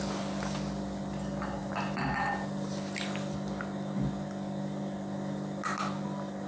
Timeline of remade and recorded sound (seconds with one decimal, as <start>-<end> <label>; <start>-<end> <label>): 0.0-6.5 recorded